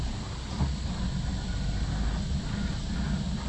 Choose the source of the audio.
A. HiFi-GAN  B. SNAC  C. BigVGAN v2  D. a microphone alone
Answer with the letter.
D